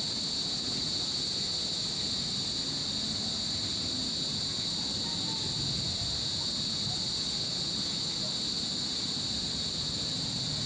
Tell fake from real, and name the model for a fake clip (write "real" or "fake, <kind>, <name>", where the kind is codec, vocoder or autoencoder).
real